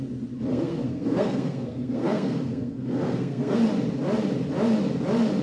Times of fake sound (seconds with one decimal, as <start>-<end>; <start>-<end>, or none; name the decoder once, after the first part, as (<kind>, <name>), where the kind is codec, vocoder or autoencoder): 0.5-3.6 (codec, SNAC)